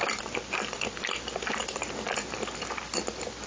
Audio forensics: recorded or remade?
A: recorded